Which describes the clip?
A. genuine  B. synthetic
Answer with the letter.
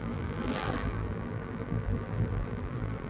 B